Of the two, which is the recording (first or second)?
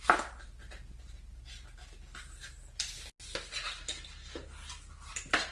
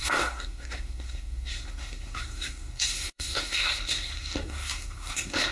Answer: first